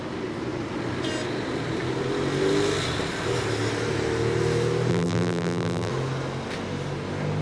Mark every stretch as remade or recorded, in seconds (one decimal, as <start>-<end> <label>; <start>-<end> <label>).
0.0-4.9 recorded; 4.9-5.9 remade; 5.9-7.4 recorded